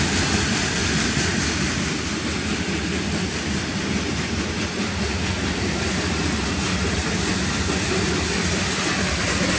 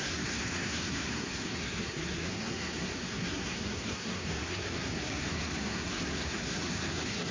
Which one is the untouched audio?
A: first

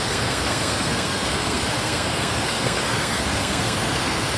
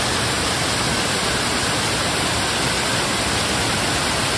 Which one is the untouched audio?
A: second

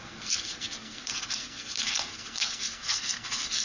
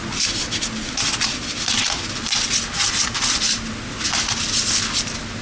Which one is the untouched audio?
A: second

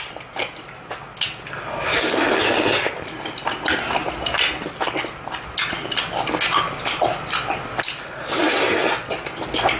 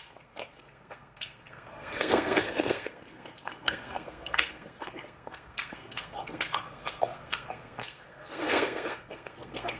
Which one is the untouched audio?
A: first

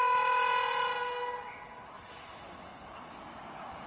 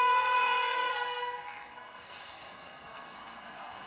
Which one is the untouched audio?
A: first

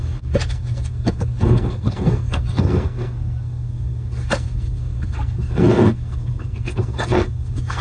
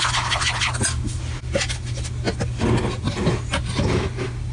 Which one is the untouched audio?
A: second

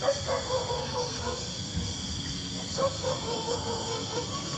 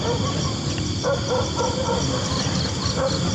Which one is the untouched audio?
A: second